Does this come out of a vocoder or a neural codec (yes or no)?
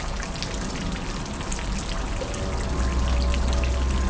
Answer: no